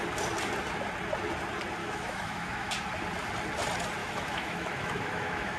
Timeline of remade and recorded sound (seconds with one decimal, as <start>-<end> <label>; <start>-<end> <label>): 0.0-1.8 recorded; 1.8-2.7 remade; 2.7-4.0 recorded; 4.0-5.6 remade